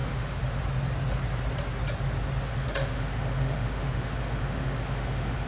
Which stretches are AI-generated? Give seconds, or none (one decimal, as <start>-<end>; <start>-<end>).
0.0-0.6; 2.5-5.5